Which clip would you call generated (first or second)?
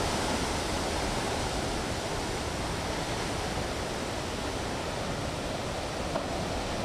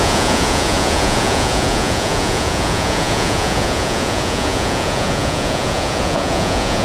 second